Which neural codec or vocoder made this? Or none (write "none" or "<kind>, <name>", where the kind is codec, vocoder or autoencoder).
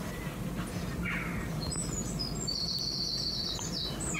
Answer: none